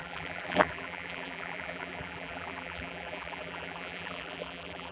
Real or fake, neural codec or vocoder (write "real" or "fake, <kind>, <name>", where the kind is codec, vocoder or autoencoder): fake, vocoder, BigVGAN v2